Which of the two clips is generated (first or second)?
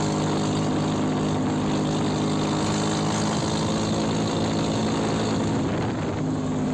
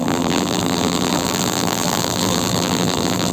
second